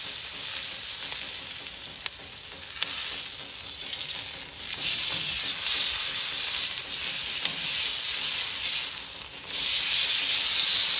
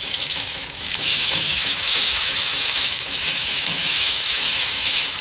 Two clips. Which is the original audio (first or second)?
first